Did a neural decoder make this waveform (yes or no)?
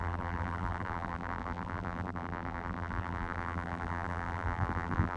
yes